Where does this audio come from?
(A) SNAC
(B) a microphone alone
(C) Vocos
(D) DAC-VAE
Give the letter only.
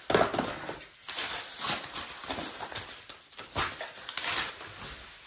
B